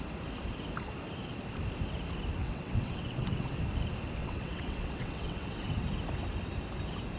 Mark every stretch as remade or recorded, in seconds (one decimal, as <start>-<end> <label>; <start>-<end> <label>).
0.0-2.4 recorded; 2.4-3.6 remade; 3.6-4.2 recorded; 4.2-5.8 remade; 5.8-7.2 recorded